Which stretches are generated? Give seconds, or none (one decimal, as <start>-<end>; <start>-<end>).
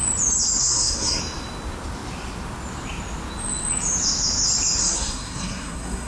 0.6-1.2; 4.8-6.1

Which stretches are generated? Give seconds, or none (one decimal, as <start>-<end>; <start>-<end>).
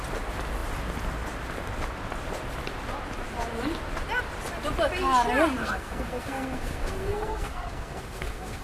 5.6-8.6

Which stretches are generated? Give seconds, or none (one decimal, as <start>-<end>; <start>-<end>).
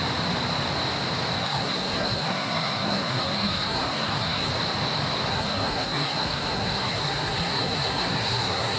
1.4-4.5; 5.3-8.8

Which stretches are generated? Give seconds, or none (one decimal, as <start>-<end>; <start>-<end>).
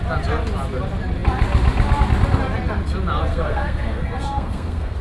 3.3-5.0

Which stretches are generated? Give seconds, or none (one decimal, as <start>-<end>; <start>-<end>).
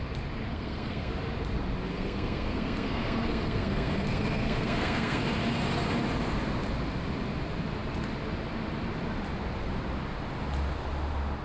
0.5-1.1; 1.9-5.2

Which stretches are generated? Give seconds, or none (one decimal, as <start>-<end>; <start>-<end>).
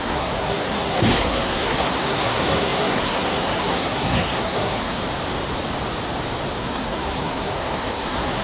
0.0-5.0; 6.6-8.4